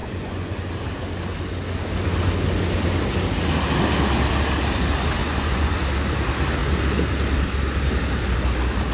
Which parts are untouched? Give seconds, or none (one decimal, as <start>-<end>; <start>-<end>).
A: 0.7-5.2; 5.7-8.9